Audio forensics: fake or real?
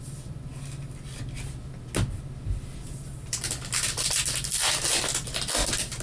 real